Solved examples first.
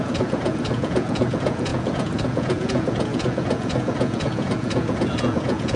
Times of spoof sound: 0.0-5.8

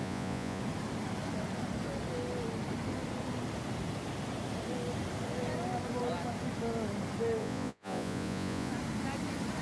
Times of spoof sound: 0.0-0.6; 7.4-8.7

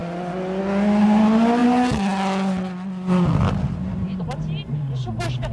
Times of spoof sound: none

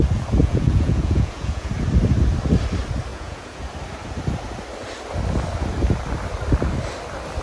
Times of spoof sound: 0.4-1.7; 3.1-3.6

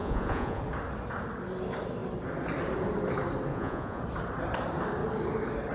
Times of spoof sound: 0.0-0.6; 3.5-4.0